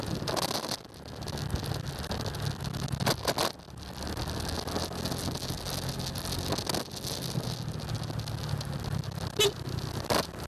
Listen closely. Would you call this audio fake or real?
real